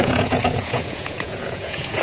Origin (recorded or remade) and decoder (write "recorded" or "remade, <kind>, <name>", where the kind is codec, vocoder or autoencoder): remade, vocoder, Vocos